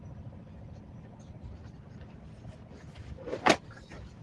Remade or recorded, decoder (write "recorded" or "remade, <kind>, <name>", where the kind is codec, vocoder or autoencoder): recorded